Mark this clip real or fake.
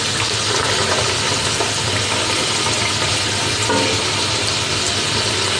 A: real